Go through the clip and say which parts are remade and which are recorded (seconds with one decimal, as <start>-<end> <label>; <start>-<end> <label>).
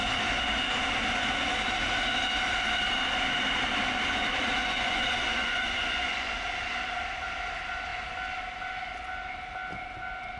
0.0-4.6 recorded; 4.6-6.3 remade; 6.3-10.4 recorded